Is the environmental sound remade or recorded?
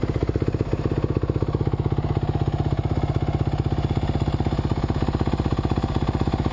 recorded